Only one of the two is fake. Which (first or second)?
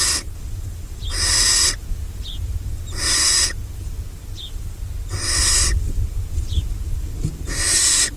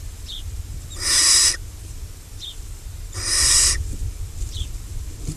second